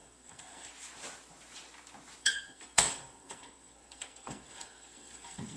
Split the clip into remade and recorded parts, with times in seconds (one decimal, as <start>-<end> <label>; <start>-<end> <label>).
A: 0.0-0.7 remade; 0.7-2.2 recorded; 2.2-5.6 remade